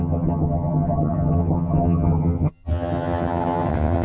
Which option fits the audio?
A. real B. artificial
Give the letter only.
B